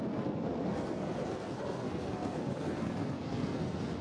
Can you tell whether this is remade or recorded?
remade